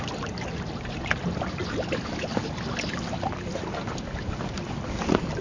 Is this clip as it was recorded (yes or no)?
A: yes